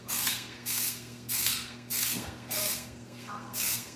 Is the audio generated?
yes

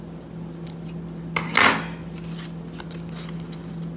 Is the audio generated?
no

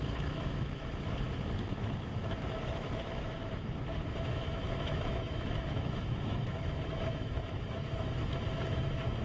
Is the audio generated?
yes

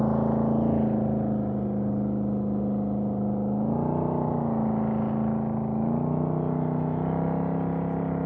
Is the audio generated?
no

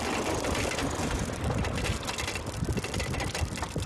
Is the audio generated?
no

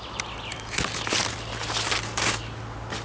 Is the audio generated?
no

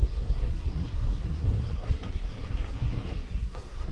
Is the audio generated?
yes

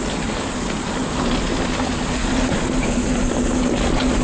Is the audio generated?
no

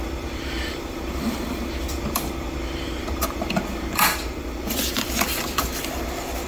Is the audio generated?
yes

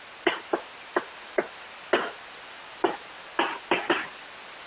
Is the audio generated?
no